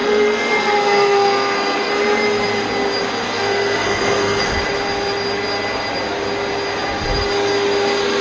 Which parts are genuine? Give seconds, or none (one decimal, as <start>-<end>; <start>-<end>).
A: 1.9-3.3; 4.4-8.2